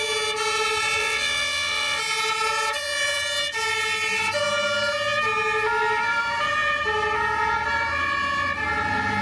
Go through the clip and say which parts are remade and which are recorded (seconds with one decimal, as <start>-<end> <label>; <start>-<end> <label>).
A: 0.0-1.0 recorded; 1.0-2.0 remade; 2.0-9.2 recorded